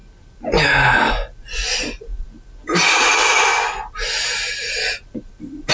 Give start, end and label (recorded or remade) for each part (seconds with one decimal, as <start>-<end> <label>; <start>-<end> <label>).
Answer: 0.0-5.7 recorded